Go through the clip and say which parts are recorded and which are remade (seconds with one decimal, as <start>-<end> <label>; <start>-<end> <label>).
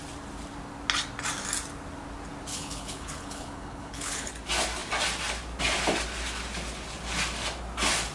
0.0-2.5 recorded; 2.5-4.3 remade; 4.3-8.1 recorded